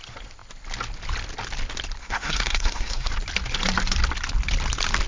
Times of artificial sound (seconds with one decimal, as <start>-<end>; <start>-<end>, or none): 2.0-3.1